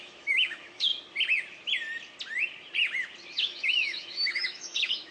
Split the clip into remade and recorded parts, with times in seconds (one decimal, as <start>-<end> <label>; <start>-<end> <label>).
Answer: 0.0-0.9 remade; 0.9-3.3 recorded; 3.3-5.1 remade